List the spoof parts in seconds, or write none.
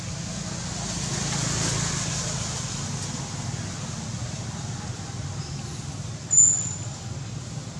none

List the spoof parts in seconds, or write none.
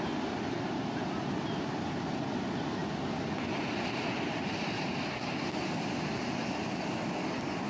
2.8-4.8 (vocoder, BigVGAN v2)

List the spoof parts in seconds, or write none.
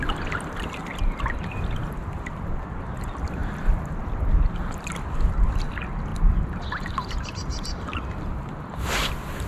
0.9-2.3 (vocoder, BigVGAN v2); 6.1-8.2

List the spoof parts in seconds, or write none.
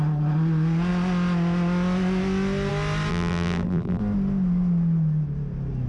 3.1-4.0 (vocoder, BigVGAN v2)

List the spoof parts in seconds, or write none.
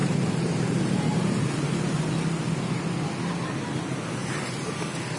0.0-2.0 (vocoder, BigVGAN v2); 4.2-4.7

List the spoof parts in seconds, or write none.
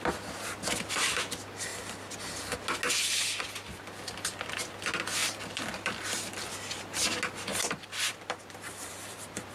5.2-6.8 (vocoder, BigVGAN v2); 7.5-9.5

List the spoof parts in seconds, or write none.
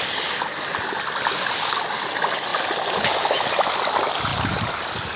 4.3-4.8 (vocoder, BigVGAN v2)